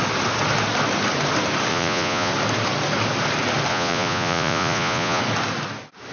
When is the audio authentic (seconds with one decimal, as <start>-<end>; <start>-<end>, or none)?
0.0-1.7; 2.3-3.7; 5.2-6.1